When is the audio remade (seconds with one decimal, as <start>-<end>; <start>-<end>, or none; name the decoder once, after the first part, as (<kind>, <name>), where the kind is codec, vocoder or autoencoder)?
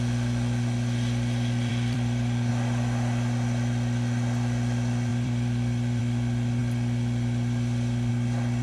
1.7-2.5 (vocoder, BigVGAN v2); 5.1-6.0